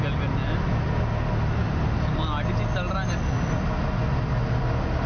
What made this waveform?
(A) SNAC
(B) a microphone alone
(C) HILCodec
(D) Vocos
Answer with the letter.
B